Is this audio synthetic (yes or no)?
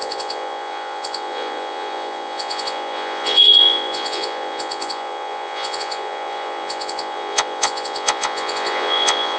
yes